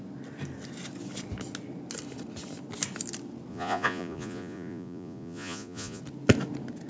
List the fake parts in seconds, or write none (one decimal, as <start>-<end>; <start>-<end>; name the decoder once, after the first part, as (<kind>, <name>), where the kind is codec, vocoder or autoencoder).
3.5-6.0 (vocoder, Vocos)